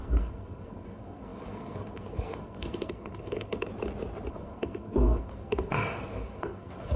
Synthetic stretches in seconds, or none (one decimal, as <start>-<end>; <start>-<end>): 0.0-3.7; 4.3-7.0